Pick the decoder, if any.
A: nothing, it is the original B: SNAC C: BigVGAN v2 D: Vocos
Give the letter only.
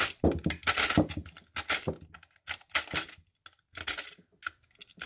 A